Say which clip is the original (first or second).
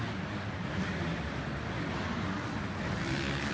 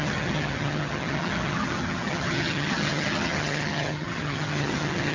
first